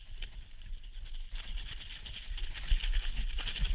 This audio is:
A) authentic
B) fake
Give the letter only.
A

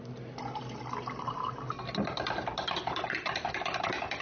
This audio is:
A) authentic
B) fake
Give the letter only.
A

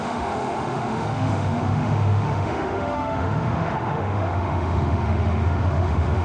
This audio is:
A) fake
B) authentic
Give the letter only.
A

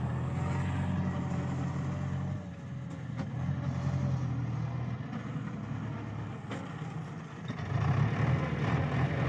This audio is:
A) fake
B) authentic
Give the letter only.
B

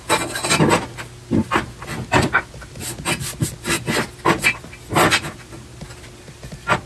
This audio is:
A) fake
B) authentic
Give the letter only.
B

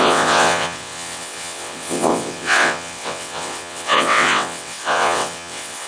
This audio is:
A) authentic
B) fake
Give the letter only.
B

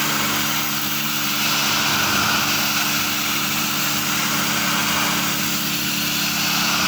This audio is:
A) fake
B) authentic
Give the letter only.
B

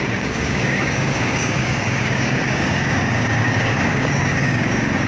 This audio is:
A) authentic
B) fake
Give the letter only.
B